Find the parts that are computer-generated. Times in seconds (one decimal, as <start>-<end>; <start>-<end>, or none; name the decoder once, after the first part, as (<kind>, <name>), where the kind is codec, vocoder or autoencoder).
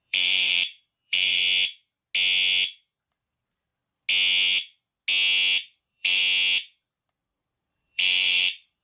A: 0.0-1.4 (vocoder, BigVGAN v2); 3.1-3.7; 5.8-6.2; 7.7-8.8